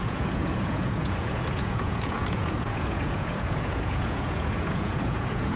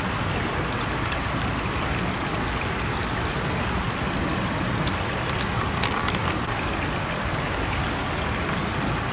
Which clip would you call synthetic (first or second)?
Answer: first